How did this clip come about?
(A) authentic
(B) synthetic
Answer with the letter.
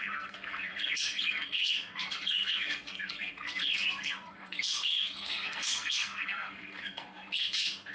B